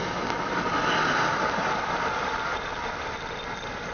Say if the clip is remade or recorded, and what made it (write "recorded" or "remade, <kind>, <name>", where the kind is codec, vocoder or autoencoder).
recorded